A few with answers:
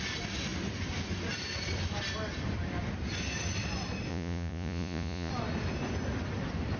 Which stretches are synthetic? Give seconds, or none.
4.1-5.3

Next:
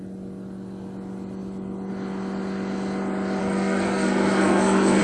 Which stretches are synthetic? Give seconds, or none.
3.4-5.0

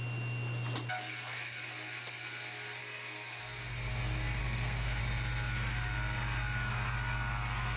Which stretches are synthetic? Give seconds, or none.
2.8-3.4; 4.4-5.0